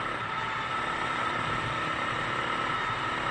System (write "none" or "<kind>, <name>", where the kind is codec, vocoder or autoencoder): none